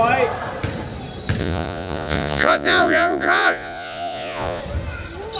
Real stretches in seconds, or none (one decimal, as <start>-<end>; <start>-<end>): 0.0-1.4; 4.6-5.4